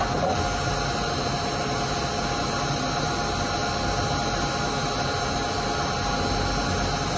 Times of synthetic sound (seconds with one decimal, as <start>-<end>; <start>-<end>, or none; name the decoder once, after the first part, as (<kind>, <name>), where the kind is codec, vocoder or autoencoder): none